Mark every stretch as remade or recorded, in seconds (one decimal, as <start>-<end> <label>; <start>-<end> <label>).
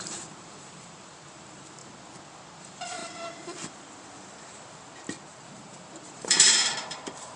0.0-1.8 remade; 1.8-2.6 recorded; 2.6-3.0 remade; 3.0-5.4 recorded; 5.4-7.4 remade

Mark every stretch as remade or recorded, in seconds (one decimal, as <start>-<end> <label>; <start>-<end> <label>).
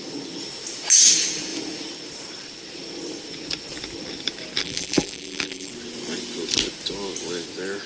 0.0-4.6 recorded; 4.6-5.7 remade; 5.7-7.9 recorded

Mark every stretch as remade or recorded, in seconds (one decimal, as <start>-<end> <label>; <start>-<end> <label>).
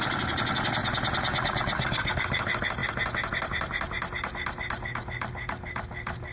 0.0-0.8 recorded; 0.8-2.1 remade; 2.1-6.3 recorded